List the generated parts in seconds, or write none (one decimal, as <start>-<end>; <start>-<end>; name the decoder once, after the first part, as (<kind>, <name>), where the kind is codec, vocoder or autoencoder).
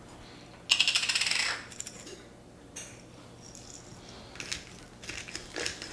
none